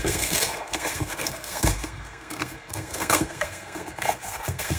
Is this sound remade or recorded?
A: remade